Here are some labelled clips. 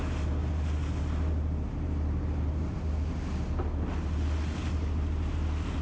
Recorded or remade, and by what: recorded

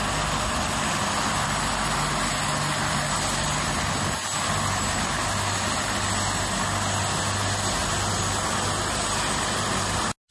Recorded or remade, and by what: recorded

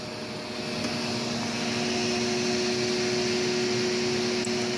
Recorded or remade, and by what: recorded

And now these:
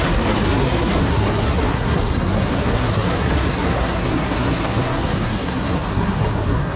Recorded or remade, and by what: remade, codec, SNAC